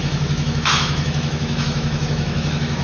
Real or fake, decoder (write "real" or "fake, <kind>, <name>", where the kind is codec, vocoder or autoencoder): fake, autoencoder, DAC-VAE